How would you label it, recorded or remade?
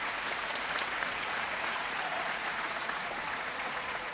remade